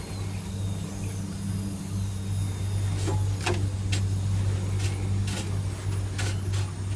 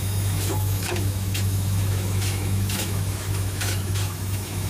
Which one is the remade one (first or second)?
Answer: second